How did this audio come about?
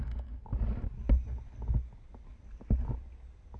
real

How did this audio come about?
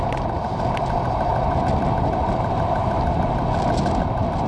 real